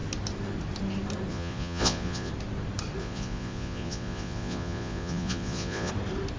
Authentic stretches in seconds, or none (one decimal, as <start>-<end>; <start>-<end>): 0.0-1.3; 2.3-3.0; 5.9-6.4